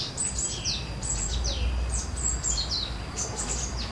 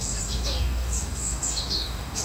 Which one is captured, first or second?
first